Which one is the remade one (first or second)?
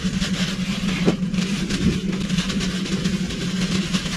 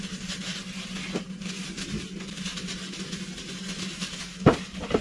first